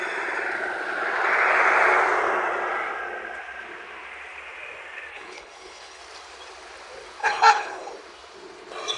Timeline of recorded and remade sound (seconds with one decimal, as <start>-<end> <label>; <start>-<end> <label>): 0.0-5.1 recorded; 5.1-6.0 remade; 6.0-7.2 recorded; 7.2-7.9 remade; 7.9-9.0 recorded